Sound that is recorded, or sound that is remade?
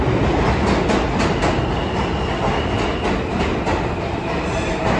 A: recorded